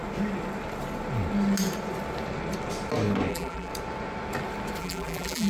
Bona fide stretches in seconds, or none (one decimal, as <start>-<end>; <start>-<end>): 0.0-3.3; 3.7-4.8